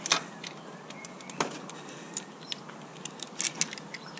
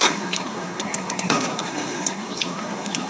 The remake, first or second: second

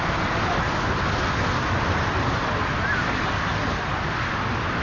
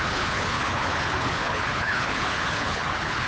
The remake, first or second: second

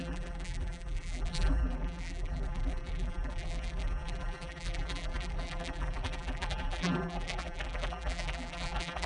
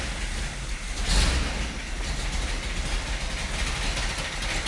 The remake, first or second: first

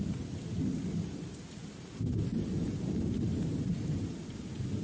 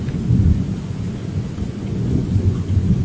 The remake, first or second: second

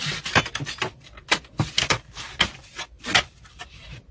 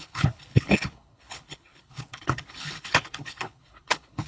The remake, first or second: second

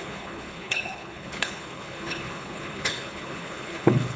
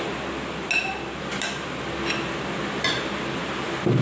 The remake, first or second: first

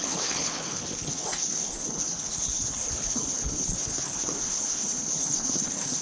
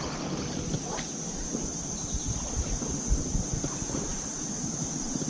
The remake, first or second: first